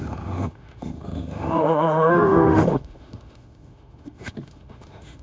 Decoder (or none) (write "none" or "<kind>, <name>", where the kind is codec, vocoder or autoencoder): autoencoder, DAC-VAE